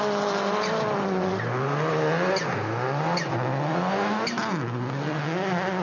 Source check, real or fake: real